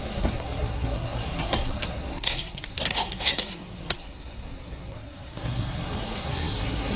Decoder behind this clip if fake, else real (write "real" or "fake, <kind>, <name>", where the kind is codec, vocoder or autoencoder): fake, codec, SNAC